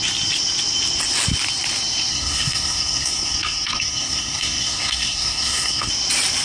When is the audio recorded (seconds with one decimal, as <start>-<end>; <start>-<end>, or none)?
0.0-2.1; 5.9-6.4